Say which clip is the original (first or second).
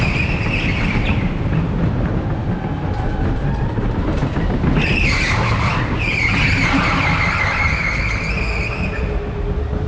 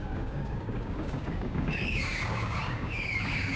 first